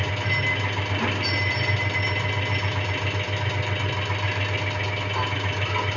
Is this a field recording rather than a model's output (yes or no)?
yes